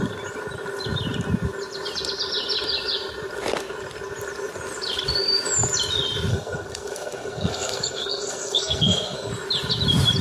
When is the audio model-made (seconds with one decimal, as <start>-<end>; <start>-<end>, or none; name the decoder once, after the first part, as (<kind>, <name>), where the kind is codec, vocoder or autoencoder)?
6.3-9.3 (codec, SNAC)

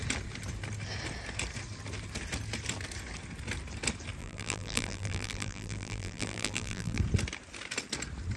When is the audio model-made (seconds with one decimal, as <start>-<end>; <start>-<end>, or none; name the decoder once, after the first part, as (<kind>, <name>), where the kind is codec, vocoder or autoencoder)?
4.2-7.0 (vocoder, BigVGAN v2)

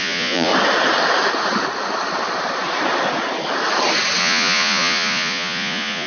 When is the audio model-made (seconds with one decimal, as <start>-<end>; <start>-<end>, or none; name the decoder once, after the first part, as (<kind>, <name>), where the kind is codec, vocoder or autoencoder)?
0.0-0.5 (vocoder, Vocos); 4.2-6.1

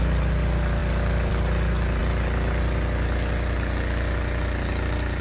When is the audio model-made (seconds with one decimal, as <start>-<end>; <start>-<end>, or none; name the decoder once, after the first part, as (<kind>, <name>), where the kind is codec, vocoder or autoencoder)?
none

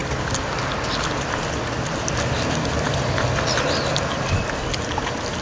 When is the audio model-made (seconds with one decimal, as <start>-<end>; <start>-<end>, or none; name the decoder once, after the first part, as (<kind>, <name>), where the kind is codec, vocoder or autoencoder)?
none